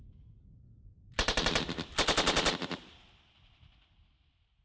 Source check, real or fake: real